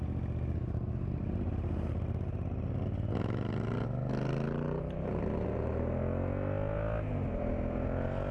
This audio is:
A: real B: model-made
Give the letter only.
A